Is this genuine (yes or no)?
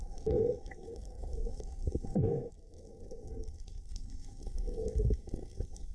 no